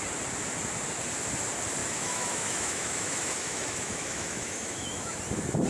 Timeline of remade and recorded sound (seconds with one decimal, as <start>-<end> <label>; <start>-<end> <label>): 0.0-1.8 recorded; 1.8-5.2 remade; 5.2-5.7 recorded